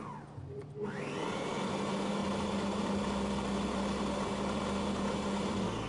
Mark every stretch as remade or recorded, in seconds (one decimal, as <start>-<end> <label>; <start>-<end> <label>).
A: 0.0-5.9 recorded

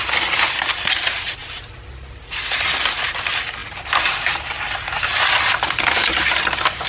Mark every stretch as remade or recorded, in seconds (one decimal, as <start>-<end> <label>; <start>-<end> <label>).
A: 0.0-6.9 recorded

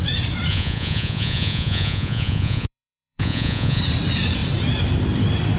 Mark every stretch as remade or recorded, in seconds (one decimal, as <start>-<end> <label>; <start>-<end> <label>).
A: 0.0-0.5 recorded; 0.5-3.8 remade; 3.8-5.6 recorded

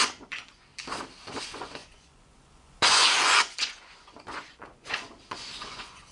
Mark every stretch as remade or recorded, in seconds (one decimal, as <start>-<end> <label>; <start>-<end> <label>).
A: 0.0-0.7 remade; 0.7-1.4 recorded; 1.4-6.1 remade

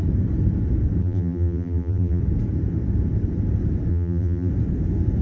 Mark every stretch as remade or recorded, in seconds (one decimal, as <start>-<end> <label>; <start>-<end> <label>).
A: 0.0-1.0 recorded; 1.0-2.2 remade; 2.2-3.9 recorded; 3.9-4.5 remade; 4.5-5.2 recorded

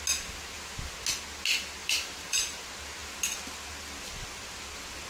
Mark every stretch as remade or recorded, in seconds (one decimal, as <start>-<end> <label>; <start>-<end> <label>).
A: 0.0-1.8 recorded; 1.8-2.6 remade; 2.6-5.1 recorded

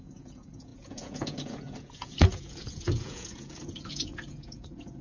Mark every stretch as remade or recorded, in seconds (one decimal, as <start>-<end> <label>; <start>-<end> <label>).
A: 0.0-5.0 remade

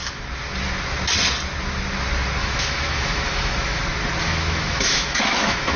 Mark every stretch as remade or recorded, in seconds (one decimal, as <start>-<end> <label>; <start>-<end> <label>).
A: 0.0-2.4 recorded; 2.4-3.8 remade; 3.8-4.2 recorded; 4.2-5.8 remade